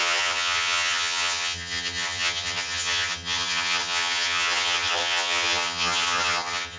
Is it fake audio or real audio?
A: fake